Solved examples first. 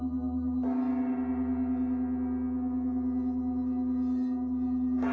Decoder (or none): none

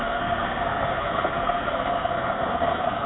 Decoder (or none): codec, SNAC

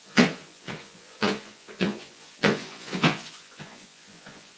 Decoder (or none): vocoder, Vocos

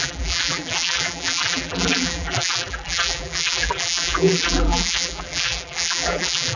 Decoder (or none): vocoder, BigVGAN v2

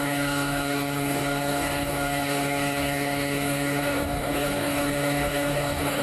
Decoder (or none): codec, DAC